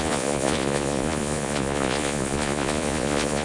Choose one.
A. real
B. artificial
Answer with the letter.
B